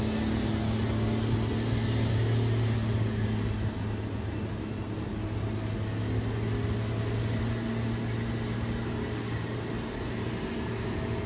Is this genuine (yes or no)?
yes